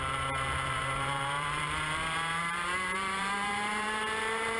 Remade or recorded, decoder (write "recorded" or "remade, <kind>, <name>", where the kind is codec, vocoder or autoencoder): remade, vocoder, BigVGAN v2